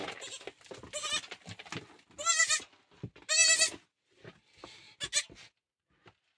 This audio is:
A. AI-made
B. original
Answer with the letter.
B